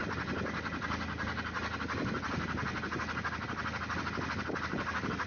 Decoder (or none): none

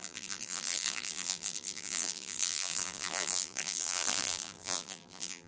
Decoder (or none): vocoder, BigVGAN v2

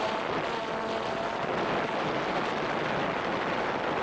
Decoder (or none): none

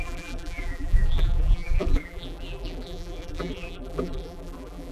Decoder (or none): vocoder, BigVGAN v2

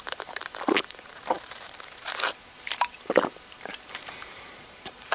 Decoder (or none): vocoder, BigVGAN v2